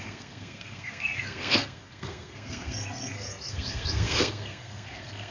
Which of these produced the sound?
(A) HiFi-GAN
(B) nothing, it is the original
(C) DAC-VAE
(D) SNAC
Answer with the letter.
D